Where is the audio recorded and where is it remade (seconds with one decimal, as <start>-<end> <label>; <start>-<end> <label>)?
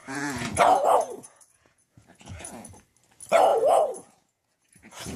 0.0-2.7 remade; 2.7-3.5 recorded; 3.5-5.2 remade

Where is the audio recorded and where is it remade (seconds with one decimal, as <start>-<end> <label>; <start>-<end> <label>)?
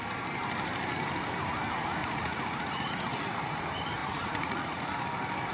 0.0-2.0 recorded; 2.0-3.3 remade; 3.3-4.0 recorded; 4.0-4.9 remade; 4.9-5.5 recorded